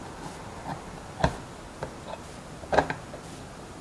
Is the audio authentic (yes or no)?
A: yes